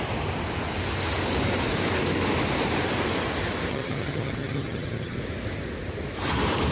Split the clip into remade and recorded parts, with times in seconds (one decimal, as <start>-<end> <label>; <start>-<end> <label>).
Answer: 0.0-3.7 recorded; 3.7-5.2 remade; 5.2-6.7 recorded